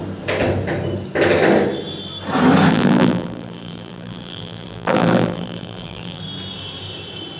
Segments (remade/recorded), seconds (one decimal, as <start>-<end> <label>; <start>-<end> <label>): 0.0-2.7 recorded; 2.7-6.2 remade; 6.2-7.4 recorded